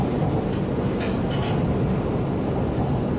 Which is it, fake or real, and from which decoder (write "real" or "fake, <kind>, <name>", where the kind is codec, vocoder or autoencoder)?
real